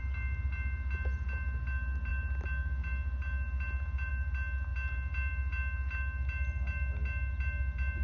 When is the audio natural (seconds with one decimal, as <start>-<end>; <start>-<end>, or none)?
0.0-8.0